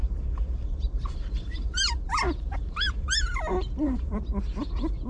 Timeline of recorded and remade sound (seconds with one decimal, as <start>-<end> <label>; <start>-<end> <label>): 0.0-3.1 remade; 3.1-3.5 recorded; 3.5-4.2 remade; 4.2-5.1 recorded